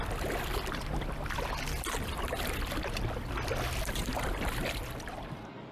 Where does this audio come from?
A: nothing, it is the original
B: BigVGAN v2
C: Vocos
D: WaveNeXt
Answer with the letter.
A